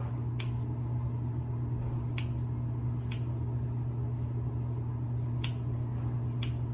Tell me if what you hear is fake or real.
real